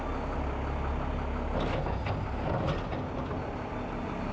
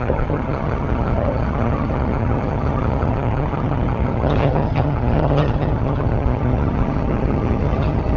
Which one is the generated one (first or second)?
second